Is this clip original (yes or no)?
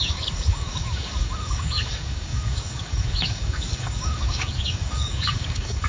no